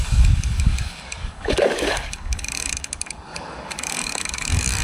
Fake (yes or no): yes